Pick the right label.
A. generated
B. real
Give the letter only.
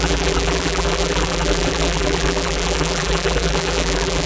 A